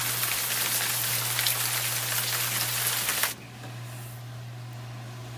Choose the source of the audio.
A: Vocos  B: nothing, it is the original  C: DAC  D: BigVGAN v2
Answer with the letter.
B